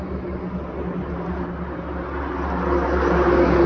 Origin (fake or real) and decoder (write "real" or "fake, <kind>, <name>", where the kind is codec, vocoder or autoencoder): real